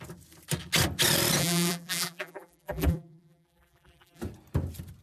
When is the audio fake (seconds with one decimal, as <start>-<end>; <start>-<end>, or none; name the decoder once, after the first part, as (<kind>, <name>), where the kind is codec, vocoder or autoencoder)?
1.4-4.2 (vocoder, BigVGAN v2)